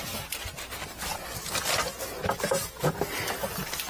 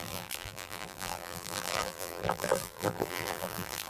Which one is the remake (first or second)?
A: second